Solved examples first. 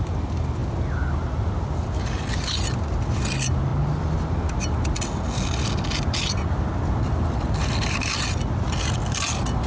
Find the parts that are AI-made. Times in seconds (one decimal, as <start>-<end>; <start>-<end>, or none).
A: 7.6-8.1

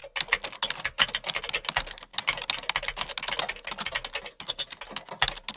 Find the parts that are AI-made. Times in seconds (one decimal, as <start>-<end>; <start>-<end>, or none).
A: none

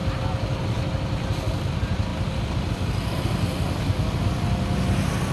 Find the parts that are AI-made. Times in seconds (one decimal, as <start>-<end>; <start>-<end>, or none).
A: none